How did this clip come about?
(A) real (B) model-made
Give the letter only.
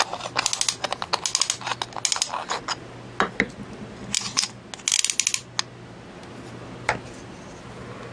A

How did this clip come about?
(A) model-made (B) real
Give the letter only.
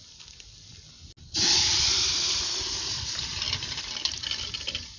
B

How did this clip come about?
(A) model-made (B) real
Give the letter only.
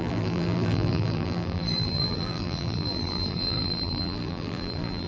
A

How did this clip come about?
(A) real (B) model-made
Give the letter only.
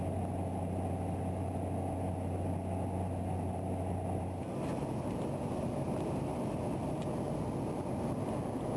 A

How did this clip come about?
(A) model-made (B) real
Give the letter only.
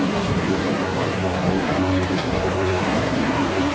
A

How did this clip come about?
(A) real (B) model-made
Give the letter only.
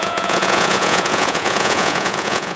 B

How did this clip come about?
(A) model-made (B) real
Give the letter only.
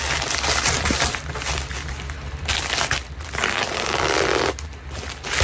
B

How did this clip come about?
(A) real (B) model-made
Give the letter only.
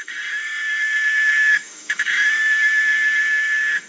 B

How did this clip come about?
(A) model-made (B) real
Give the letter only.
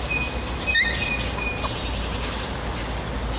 B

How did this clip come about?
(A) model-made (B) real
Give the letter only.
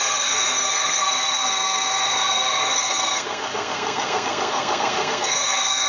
A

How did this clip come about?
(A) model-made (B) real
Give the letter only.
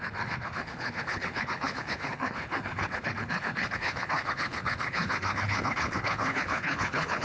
A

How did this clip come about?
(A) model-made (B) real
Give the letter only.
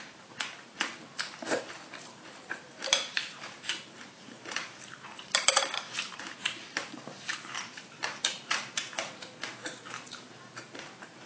A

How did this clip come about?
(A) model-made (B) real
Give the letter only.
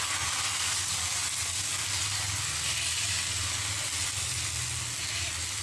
B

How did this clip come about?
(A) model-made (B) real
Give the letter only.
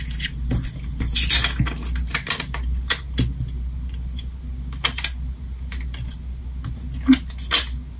B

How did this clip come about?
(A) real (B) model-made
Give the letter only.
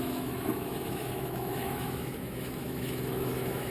B